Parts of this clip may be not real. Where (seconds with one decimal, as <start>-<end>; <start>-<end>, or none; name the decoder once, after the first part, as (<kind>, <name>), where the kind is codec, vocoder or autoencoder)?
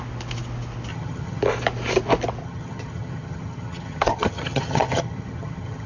0.9-1.4 (vocoder, HiFi-GAN); 2.4-5.9